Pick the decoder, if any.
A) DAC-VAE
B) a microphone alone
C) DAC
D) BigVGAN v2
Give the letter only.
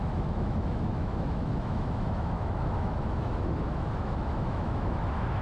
A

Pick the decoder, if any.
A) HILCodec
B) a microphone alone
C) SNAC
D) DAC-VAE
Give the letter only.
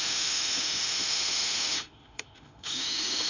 D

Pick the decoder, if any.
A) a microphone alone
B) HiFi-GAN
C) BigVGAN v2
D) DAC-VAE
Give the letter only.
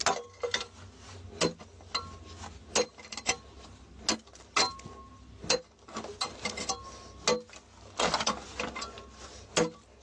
A